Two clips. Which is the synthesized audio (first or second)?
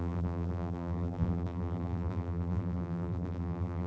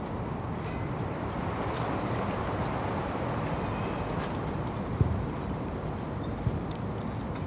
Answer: first